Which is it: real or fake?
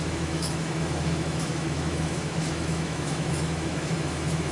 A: fake